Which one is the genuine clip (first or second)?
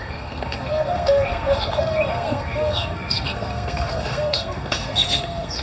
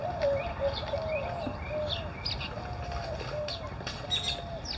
second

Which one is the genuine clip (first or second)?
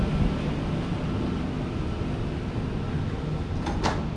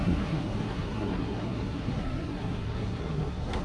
first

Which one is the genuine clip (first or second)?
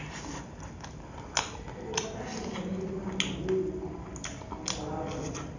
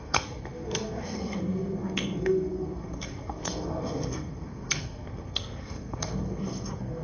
first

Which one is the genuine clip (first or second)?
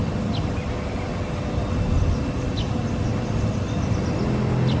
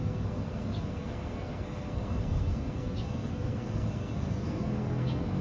first